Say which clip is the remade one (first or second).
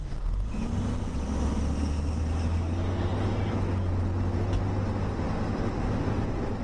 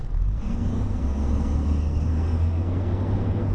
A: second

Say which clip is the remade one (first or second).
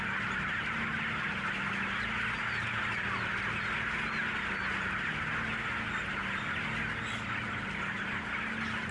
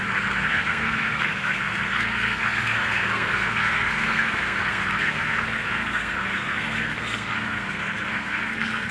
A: second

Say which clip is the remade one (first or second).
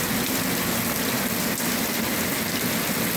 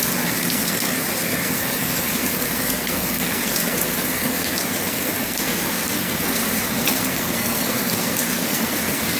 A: second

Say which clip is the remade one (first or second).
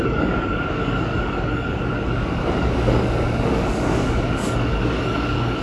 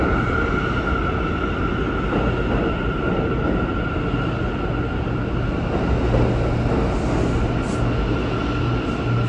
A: first